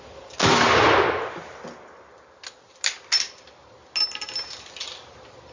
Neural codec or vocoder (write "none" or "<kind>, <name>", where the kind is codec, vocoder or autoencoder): none